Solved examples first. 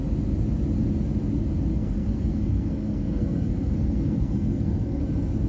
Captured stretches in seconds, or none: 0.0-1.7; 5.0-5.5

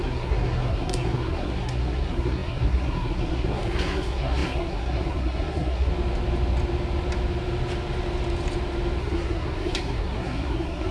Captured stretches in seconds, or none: 5.9-9.0

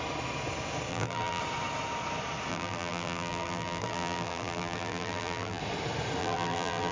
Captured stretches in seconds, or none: 0.0-0.9; 1.4-2.5; 5.6-6.2

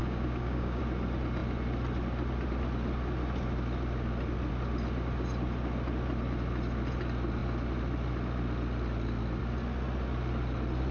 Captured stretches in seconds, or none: 0.8-10.9